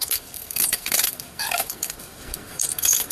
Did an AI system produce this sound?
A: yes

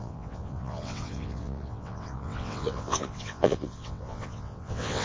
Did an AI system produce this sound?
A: yes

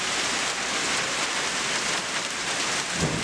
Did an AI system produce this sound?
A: no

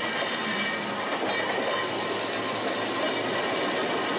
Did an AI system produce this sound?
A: no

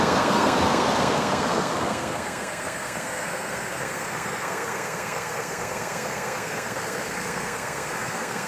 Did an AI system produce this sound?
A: yes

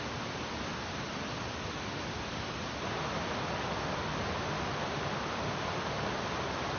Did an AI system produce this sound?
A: no